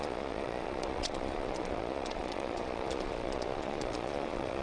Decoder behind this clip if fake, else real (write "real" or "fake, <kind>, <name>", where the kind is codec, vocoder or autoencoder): fake, vocoder, Vocos